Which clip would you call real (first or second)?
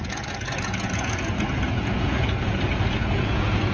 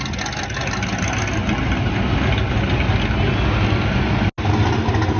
second